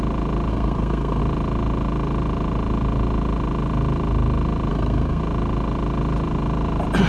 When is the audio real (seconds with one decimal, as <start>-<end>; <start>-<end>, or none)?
0.0-0.5; 1.2-4.7; 5.2-7.1